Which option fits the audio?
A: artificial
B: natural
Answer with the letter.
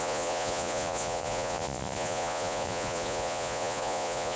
A